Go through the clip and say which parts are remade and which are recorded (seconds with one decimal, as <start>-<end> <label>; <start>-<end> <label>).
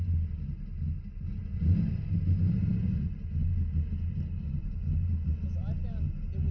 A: 0.0-6.5 recorded